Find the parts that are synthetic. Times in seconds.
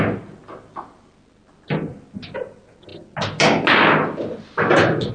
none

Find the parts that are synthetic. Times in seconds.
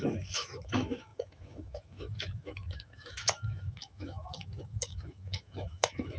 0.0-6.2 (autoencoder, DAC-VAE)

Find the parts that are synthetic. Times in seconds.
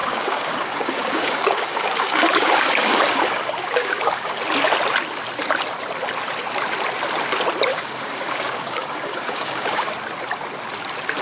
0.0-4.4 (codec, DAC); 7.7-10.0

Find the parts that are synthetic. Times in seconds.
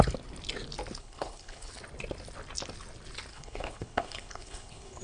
1.0-1.7 (codec, HILCodec); 3.3-5.0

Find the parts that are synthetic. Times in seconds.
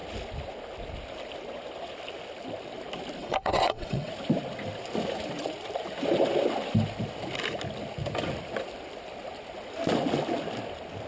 3.2-4.1 (vocoder, WaveNeXt)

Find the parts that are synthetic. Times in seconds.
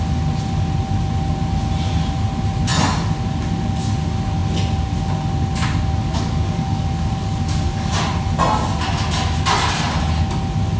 6.0-7.9 (codec, DAC)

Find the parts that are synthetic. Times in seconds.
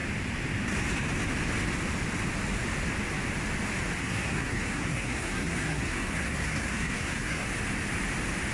4.0-7.5 (codec, SNAC)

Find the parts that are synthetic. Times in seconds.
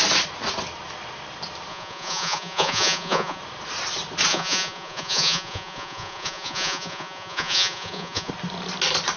1.7-3.4 (vocoder, Vocos); 4.3-8.3